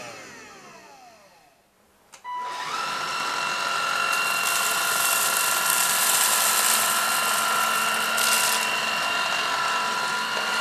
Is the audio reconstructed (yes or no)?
no